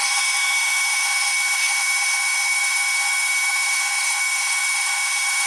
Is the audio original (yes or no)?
no